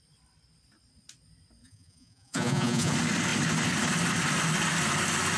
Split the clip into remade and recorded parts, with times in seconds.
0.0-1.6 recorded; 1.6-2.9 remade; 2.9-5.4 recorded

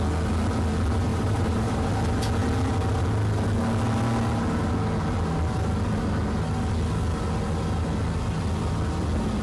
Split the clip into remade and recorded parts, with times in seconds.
0.0-1.1 recorded; 1.1-1.9 remade; 1.9-9.4 recorded

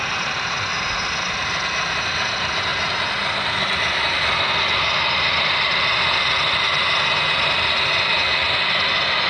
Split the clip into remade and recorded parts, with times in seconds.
0.0-9.3 recorded

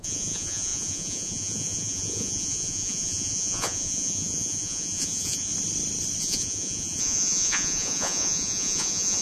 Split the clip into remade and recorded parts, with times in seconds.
0.0-5.5 remade; 5.5-6.2 recorded; 6.2-9.2 remade